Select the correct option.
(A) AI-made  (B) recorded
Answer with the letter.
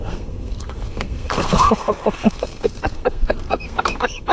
A